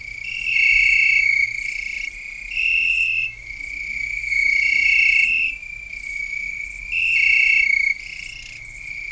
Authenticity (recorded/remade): recorded